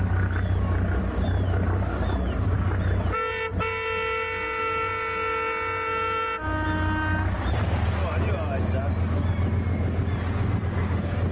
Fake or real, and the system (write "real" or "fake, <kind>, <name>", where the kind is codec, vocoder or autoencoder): real